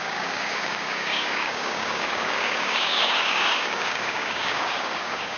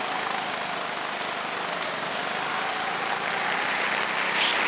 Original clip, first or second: second